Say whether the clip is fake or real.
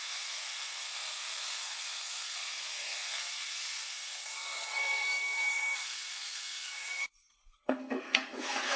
fake